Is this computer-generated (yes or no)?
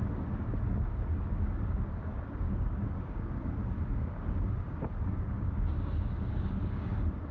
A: yes